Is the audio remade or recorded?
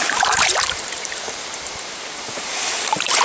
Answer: remade